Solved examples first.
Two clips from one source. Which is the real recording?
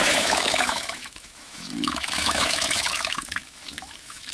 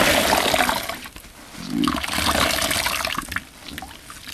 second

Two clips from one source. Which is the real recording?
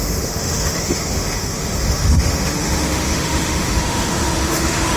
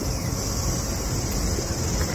second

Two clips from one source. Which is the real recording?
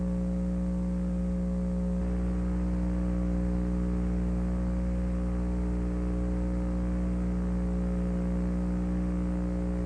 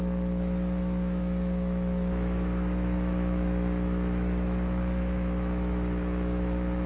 first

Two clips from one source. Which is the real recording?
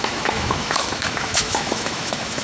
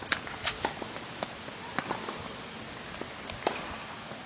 second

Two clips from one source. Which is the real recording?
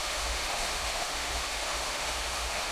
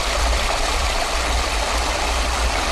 second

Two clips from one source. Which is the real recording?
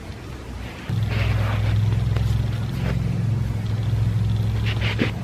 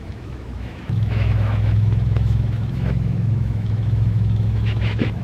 first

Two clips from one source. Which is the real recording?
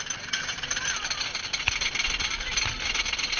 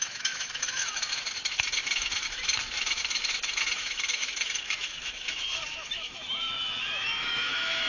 first